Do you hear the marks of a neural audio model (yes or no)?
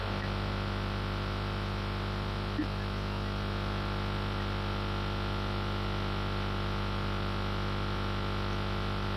no